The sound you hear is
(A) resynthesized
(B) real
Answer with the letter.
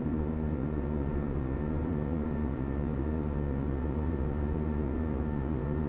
A